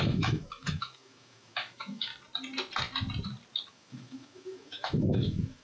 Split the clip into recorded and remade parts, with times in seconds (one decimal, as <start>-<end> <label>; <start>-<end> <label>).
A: 0.0-2.1 remade; 2.1-3.7 recorded; 3.7-5.6 remade